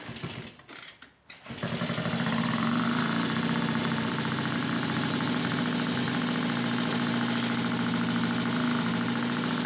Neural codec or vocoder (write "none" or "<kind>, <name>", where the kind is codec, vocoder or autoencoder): none